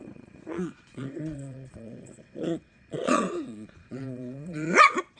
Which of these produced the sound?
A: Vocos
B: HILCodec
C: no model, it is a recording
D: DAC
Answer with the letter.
A